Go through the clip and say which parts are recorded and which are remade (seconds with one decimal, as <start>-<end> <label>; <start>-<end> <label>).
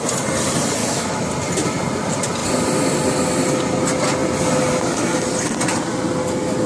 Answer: 0.0-0.8 recorded; 0.8-1.3 remade; 1.3-6.7 recorded